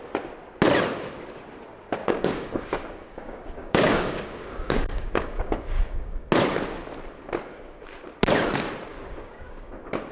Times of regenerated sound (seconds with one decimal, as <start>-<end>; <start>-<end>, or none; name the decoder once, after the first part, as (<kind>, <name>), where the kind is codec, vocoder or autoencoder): 2.0-6.3 (codec, DAC); 8.9-9.7

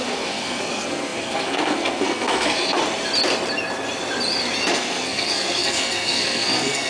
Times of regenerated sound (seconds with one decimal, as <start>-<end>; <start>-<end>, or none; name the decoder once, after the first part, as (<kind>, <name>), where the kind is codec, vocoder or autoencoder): 0.0-2.8 (codec, SNAC); 4.7-6.9

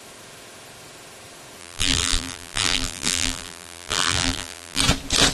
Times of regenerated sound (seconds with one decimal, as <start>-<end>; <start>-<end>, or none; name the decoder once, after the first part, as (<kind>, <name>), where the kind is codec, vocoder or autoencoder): 1.6-4.8 (vocoder, BigVGAN v2)

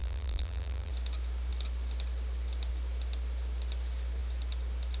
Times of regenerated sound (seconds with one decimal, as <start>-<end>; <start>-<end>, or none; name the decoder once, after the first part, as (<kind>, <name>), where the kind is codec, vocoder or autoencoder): 0.0-0.9 (vocoder, BigVGAN v2)

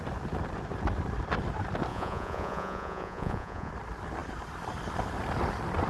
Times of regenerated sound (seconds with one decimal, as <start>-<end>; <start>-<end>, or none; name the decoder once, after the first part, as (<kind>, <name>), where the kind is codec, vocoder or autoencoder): 1.9-3.7 (vocoder, Vocos)